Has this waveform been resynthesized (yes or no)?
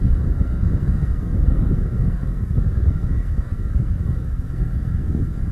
yes